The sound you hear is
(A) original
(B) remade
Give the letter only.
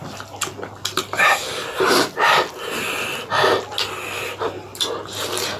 A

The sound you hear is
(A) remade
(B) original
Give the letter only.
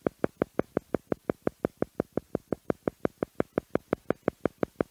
B